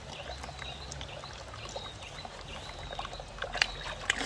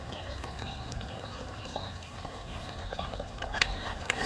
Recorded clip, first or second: first